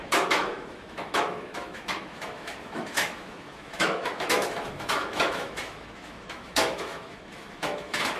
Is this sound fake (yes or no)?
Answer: yes